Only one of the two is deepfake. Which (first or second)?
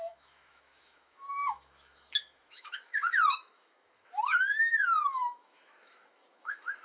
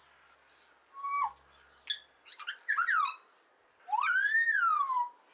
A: first